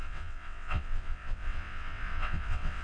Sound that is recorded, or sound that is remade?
remade